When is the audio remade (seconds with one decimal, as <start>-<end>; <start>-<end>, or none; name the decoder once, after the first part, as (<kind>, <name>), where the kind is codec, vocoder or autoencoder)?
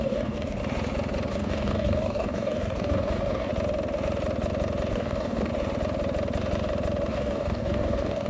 0.0-0.6 (codec, DAC); 1.3-3.5; 4.9-5.5; 7.1-8.3